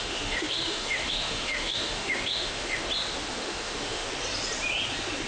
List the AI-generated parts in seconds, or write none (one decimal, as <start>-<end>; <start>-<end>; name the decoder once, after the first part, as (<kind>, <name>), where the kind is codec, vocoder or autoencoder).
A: 0.0-2.9 (autoencoder, DAC-VAE); 3.4-4.1